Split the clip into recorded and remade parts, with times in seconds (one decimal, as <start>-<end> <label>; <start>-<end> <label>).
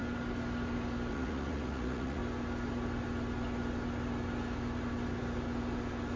0.0-1.1 recorded; 1.1-2.2 remade; 2.2-6.2 recorded